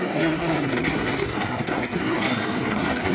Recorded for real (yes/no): no